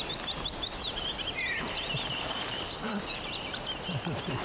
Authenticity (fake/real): real